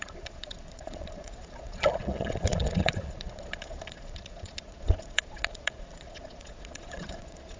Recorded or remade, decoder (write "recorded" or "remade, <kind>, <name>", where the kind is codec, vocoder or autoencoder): remade, vocoder, Vocos